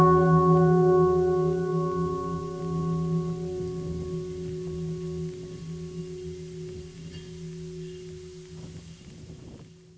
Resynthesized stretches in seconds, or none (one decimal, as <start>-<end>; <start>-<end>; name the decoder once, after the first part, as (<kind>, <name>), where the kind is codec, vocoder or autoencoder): none